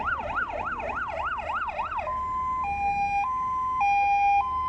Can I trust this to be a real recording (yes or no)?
yes